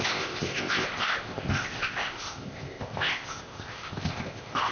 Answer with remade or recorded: remade